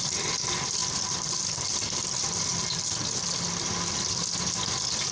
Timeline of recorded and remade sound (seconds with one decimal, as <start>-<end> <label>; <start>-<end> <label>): 0.0-5.1 recorded